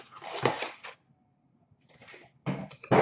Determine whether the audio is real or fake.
real